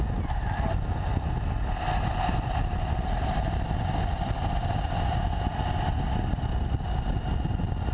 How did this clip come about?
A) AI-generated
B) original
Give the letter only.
B